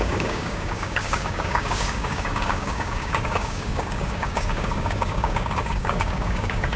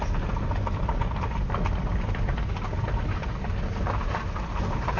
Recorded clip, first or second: second